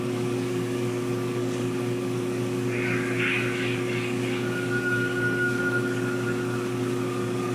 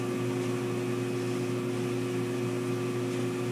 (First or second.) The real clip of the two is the second